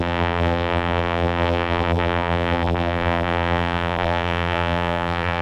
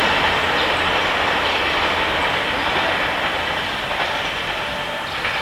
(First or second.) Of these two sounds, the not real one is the first